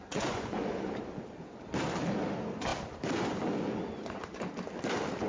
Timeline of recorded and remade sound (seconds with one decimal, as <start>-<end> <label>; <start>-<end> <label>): 0.0-0.6 remade; 0.6-5.3 recorded